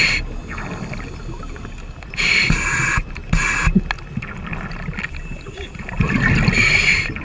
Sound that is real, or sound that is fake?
real